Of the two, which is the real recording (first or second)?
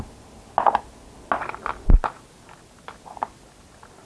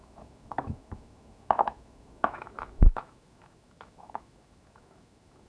first